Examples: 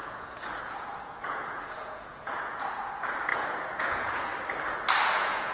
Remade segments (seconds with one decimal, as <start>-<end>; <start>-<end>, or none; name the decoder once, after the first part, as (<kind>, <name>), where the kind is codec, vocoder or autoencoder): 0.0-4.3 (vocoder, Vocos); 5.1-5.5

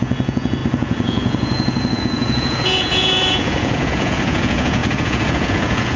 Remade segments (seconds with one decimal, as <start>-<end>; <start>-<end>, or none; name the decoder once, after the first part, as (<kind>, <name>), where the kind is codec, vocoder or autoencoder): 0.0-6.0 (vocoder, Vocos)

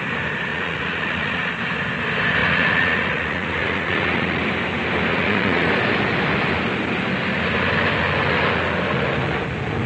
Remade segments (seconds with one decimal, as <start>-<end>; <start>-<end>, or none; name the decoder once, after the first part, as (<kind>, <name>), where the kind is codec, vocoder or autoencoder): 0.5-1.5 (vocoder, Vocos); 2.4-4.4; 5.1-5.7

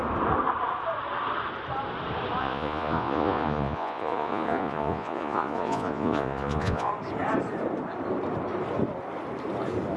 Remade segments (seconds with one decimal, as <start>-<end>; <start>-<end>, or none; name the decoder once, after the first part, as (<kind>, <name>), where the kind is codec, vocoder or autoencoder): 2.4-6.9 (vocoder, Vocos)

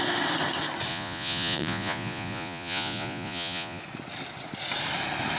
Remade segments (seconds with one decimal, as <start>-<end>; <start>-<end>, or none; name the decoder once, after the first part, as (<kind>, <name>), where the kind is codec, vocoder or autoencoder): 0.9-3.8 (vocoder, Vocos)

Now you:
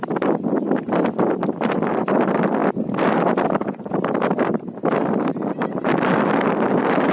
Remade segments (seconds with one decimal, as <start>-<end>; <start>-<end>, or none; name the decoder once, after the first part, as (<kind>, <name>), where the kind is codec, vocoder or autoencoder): none